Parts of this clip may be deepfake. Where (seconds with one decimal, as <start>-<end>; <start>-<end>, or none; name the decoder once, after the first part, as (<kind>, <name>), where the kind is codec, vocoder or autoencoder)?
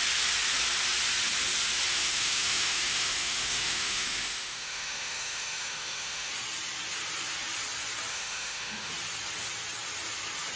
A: 1.9-6.3 (autoencoder, DAC-VAE); 8.1-8.9